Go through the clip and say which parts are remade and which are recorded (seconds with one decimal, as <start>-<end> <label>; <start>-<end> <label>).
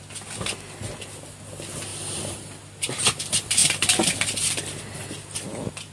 0.0-1.9 recorded; 1.9-2.6 remade; 2.6-3.6 recorded; 3.6-5.5 remade; 5.5-5.9 recorded